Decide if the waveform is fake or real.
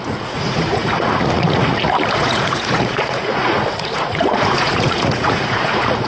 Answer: fake